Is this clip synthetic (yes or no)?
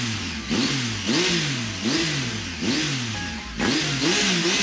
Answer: no